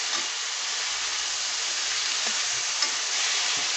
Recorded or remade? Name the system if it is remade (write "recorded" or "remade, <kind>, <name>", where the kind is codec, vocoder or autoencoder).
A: recorded